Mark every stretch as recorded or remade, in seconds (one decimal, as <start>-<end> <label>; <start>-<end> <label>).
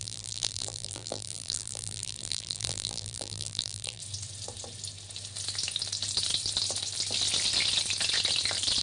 0.0-4.0 remade; 4.0-8.8 recorded